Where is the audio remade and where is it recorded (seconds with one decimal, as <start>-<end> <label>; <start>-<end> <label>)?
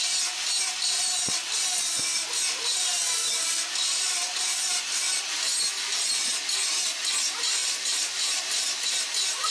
0.0-7.6 recorded; 7.6-8.9 remade; 8.9-9.5 recorded